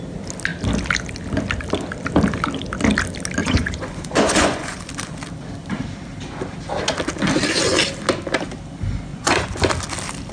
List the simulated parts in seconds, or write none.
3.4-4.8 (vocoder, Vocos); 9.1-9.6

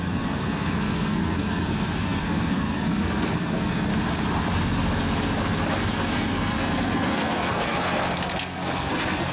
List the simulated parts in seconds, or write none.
0.0-3.9 (codec, SNAC); 5.8-9.3

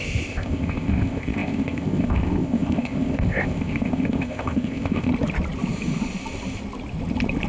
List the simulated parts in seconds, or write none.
0.0-5.1 (codec, ZipCodec)

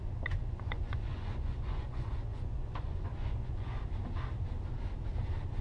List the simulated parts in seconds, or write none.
0.4-3.8 (vocoder, Vocos)

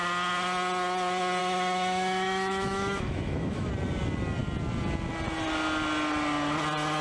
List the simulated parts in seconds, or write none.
1.4-3.7 (autoencoder, DAC-VAE)